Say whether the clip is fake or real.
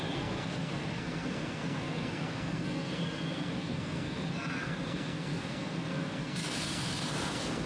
fake